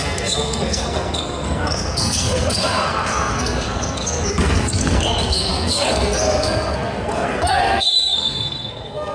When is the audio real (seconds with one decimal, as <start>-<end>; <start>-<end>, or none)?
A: none